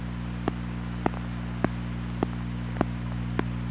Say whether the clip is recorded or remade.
recorded